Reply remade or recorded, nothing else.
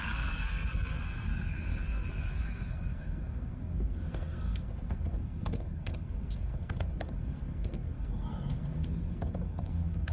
remade